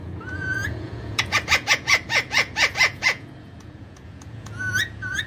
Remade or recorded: remade